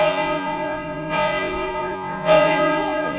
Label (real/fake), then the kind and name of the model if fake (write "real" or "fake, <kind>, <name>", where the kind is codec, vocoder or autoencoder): fake, vocoder, Vocos